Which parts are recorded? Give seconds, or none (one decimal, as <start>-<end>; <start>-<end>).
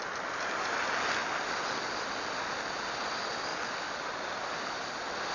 0.0-5.3